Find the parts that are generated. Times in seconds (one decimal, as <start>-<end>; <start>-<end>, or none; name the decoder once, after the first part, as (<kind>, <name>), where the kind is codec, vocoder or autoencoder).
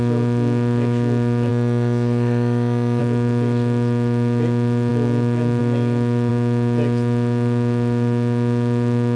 1.5-3.0 (autoencoder, DAC-VAE)